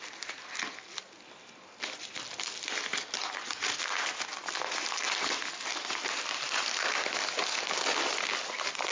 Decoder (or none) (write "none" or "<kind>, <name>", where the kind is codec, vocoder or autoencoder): none